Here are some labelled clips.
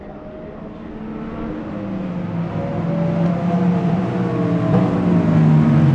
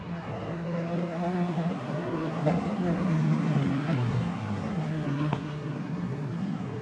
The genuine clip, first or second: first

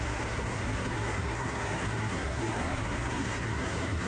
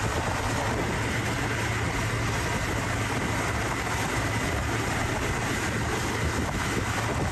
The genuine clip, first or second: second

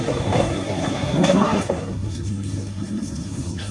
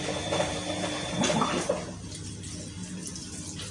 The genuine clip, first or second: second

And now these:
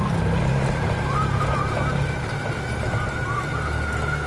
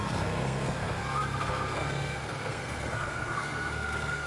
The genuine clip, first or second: first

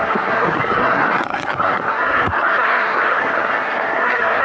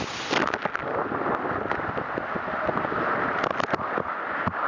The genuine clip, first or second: second